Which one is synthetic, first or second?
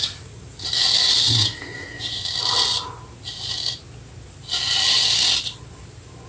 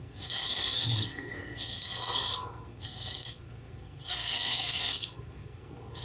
second